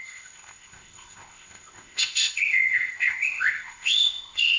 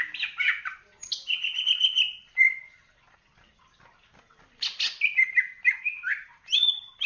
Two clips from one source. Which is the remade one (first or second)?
first